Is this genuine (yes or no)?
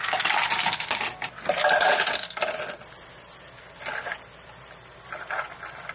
yes